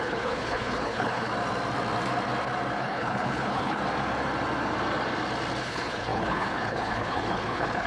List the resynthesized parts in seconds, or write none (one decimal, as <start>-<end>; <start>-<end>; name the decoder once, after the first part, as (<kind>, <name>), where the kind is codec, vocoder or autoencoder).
0.0-1.3 (codec, HILCodec); 2.8-3.8; 5.6-7.9